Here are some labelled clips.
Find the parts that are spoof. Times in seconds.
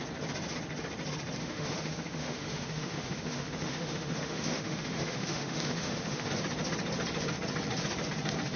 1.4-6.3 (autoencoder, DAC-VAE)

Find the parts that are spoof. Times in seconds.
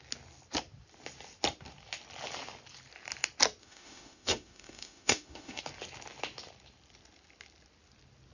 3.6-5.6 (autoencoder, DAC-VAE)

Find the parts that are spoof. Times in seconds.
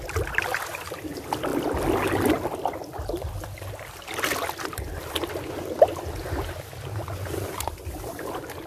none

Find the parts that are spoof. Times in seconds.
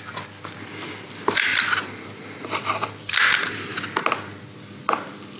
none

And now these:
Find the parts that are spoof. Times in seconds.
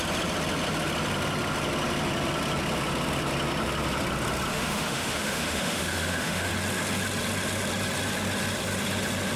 4.5-6.5 (autoencoder, DAC-VAE)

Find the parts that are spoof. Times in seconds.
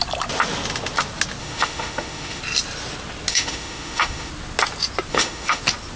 1.4-2.4 (autoencoder, DAC-VAE); 3.3-4.3; 5.1-5.6